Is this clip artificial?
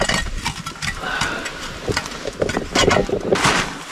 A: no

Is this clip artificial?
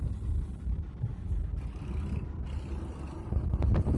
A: yes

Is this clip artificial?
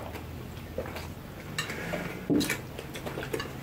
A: no